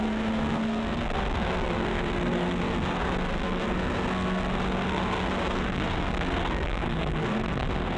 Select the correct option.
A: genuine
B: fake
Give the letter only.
B